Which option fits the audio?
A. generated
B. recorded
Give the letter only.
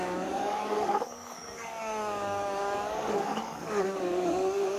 A